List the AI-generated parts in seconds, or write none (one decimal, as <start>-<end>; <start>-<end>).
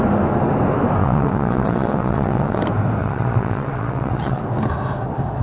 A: 1.0-2.6; 3.0-4.4